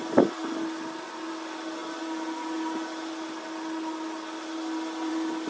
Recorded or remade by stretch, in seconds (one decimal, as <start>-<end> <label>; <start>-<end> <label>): 0.0-5.5 recorded